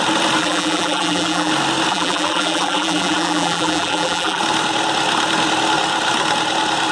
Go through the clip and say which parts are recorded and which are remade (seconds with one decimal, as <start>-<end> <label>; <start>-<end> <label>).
0.0-0.4 recorded; 0.4-1.5 remade; 1.5-1.9 recorded; 1.9-4.4 remade; 4.4-6.9 recorded

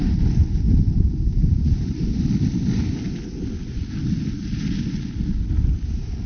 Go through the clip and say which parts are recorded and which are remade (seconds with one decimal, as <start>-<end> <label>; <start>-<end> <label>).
0.0-1.4 recorded; 1.4-2.2 remade; 2.2-6.3 recorded

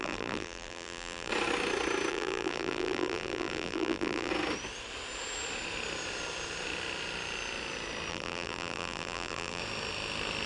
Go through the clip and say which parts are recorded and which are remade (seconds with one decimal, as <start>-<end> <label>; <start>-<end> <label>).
0.0-1.3 remade; 1.3-2.1 recorded; 2.1-4.3 remade; 4.3-8.1 recorded; 8.1-9.6 remade; 9.6-10.5 recorded

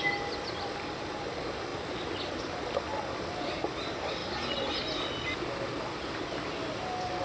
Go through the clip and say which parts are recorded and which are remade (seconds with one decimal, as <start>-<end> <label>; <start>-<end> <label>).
0.0-7.2 recorded

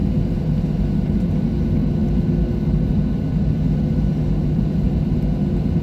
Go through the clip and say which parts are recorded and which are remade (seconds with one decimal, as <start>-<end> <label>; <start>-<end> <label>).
0.0-4.4 recorded; 4.4-5.2 remade; 5.2-5.8 recorded

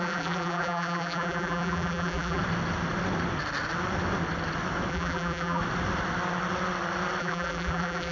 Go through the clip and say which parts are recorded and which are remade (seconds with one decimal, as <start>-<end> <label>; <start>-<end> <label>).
0.0-2.4 remade; 2.4-4.9 recorded; 4.9-5.6 remade; 5.6-7.2 recorded; 7.2-8.1 remade

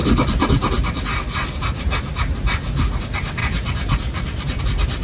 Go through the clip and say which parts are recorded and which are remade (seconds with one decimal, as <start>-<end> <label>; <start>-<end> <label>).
0.0-3.4 recorded; 3.4-4.6 remade; 4.6-5.0 recorded

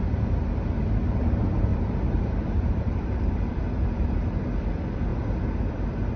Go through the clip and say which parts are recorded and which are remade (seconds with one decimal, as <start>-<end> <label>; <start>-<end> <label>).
0.0-1.7 recorded; 1.7-3.6 remade; 3.6-6.2 recorded